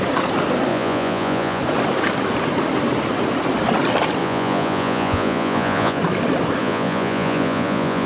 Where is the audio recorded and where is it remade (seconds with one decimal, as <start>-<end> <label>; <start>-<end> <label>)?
0.0-0.7 recorded; 0.7-1.6 remade; 1.6-4.2 recorded; 4.2-6.0 remade; 6.0-6.6 recorded; 6.6-8.1 remade